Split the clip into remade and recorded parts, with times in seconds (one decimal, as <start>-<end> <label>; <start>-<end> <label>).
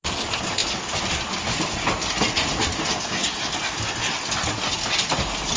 0.0-5.6 recorded